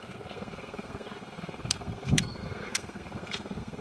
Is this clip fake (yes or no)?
yes